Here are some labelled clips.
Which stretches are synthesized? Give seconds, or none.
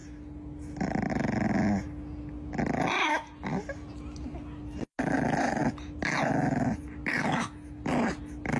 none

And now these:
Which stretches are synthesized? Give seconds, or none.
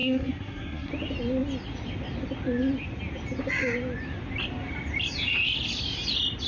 0.0-0.9 (codec, SNAC)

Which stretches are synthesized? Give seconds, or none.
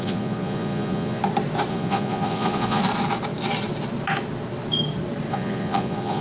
0.0-1.2 (vocoder, Vocos); 1.7-2.8; 5.3-6.2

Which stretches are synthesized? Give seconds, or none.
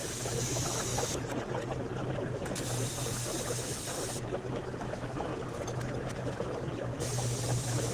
0.5-0.9 (autoencoder, DAC-VAE); 4.8-5.3; 7.4-7.9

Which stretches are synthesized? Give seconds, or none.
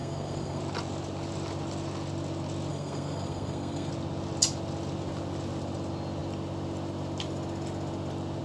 0.0-0.6 (codec, SNAC); 2.7-3.9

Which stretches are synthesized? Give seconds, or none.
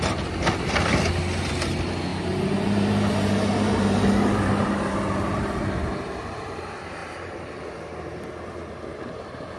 2.1-6.6 (vocoder, BigVGAN v2); 7.0-7.5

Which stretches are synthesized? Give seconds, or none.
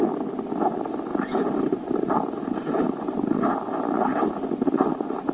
1.1-4.3 (vocoder, BigVGAN v2)